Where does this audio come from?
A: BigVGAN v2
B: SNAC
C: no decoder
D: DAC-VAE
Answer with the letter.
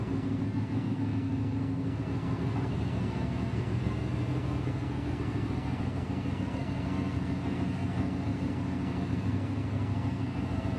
B